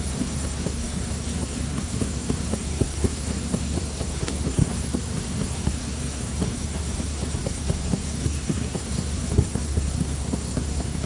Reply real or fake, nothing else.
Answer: fake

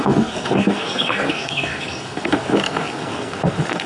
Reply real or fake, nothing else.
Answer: fake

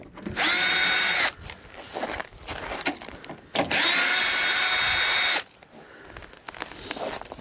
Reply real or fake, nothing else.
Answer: real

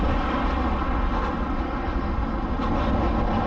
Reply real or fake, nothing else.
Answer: real